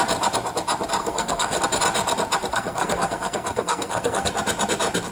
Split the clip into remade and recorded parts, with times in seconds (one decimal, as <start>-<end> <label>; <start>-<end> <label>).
0.0-1.0 recorded; 1.0-1.6 remade; 1.6-2.5 recorded; 2.5-4.3 remade; 4.3-5.1 recorded